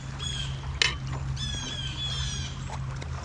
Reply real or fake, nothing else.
real